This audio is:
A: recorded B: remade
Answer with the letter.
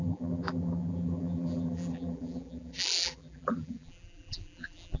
B